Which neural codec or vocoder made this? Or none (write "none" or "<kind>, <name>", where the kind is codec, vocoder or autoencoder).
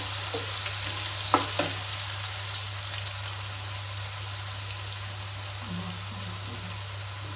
none